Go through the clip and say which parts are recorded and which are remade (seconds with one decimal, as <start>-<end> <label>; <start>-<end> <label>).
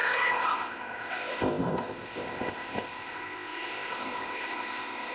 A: 0.0-5.1 remade